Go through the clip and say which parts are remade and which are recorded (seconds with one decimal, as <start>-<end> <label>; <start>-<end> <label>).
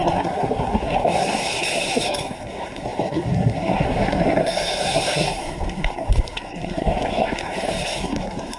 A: 0.0-8.6 remade